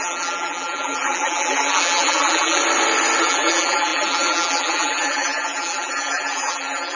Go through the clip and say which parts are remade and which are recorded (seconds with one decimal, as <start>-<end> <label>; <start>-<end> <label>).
0.0-2.6 remade; 2.6-3.2 recorded; 3.2-7.0 remade

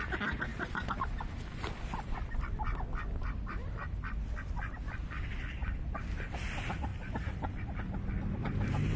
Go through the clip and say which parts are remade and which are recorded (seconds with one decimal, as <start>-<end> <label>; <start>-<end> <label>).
0.0-0.5 recorded; 0.5-1.5 remade; 1.5-6.9 recorded; 6.9-7.8 remade; 7.8-9.0 recorded